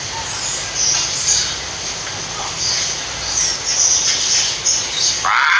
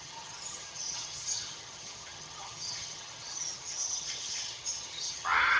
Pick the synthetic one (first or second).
second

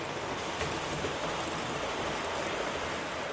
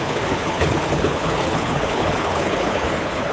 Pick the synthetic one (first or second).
second